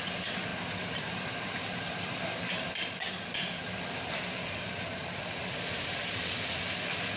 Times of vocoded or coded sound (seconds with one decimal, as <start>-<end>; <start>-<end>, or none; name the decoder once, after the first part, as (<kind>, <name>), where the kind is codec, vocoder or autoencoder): none